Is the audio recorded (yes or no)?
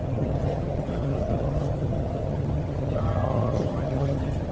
no